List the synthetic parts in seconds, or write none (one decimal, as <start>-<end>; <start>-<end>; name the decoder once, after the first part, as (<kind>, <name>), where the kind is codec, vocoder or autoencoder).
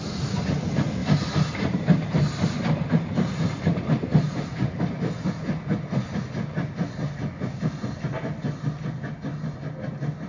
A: 1.0-4.8 (vocoder, BigVGAN v2)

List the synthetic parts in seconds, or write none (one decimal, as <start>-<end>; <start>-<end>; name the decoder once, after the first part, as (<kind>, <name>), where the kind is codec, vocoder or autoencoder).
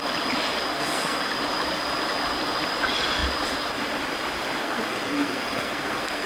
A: 0.7-1.3 (codec, SNAC); 4.6-6.3